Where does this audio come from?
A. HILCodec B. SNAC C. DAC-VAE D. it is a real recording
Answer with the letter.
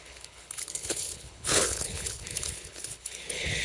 A